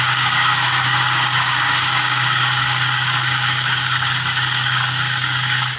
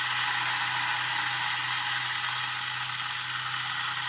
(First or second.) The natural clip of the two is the second